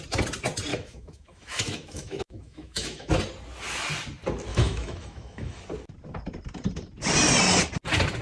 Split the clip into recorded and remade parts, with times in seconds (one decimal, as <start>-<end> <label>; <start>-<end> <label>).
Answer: 0.0-0.7 recorded; 0.7-3.1 remade; 3.1-4.5 recorded; 4.5-5.6 remade; 5.6-8.2 recorded